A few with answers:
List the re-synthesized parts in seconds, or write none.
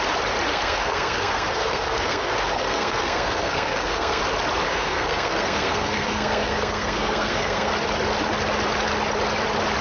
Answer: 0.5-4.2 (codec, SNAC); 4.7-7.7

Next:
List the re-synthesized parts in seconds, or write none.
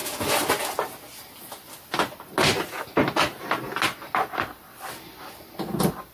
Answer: none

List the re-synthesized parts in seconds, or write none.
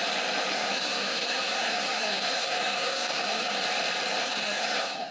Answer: 0.5-3.6 (codec, SNAC); 4.2-5.1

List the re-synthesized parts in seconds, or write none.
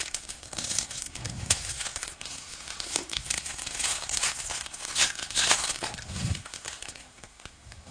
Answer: 0.0-7.9 (codec, SNAC)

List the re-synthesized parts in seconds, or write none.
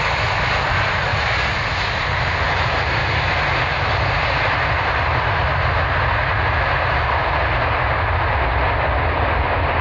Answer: none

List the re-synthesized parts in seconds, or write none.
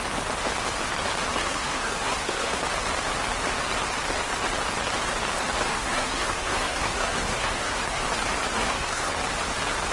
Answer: 1.4-2.6 (codec, SNAC); 5.7-8.0; 8.5-9.1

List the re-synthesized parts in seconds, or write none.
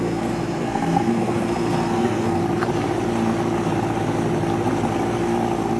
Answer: 0.0-2.4 (codec, SNAC)